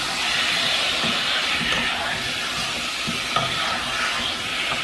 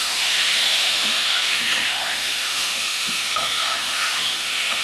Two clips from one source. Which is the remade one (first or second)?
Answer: second